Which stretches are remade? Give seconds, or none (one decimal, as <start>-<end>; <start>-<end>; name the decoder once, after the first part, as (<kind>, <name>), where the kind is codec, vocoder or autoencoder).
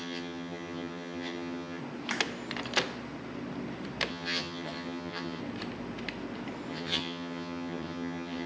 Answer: 0.0-1.8 (vocoder, HiFi-GAN); 4.1-5.4; 6.7-8.5